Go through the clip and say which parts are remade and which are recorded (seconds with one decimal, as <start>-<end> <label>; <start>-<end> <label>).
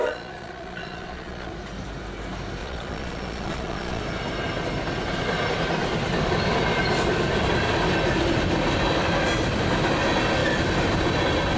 0.0-1.5 remade; 1.5-2.6 recorded; 2.6-4.0 remade; 4.0-11.6 recorded